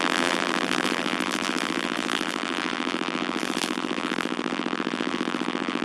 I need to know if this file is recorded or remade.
remade